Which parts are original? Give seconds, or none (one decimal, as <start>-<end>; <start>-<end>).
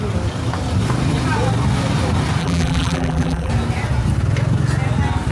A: 0.0-2.4; 3.5-5.3